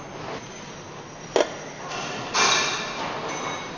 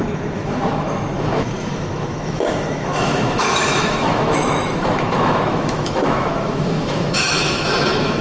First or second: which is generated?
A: second